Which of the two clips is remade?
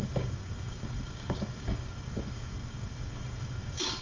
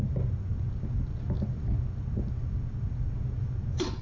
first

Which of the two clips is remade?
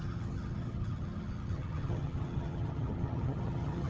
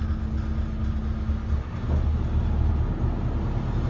first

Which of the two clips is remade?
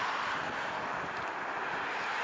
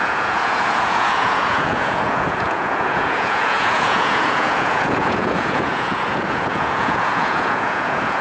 second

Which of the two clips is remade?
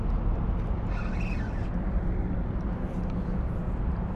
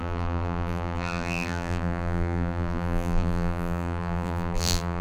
second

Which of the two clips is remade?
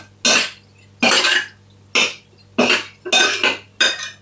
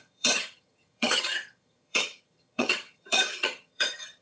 second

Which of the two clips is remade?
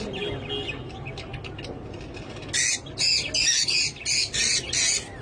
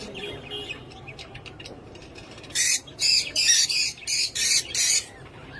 second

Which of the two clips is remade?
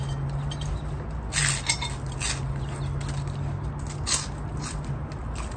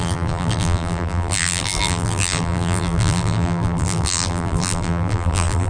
second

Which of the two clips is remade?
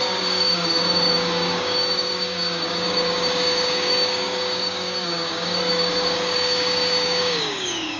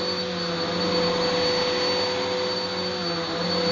first